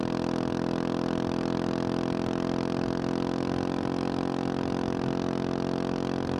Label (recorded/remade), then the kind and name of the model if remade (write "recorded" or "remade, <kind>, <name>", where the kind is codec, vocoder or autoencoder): recorded